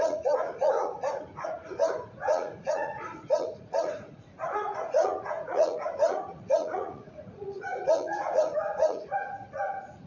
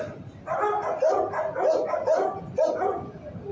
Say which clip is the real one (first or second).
second